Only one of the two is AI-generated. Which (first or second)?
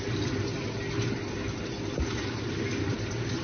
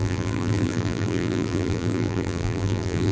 second